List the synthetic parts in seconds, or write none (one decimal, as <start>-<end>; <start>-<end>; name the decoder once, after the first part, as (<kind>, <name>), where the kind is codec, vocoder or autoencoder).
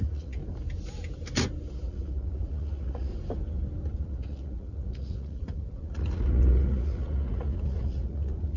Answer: 0.0-0.4 (vocoder, Vocos); 1.9-3.1; 4.0-8.6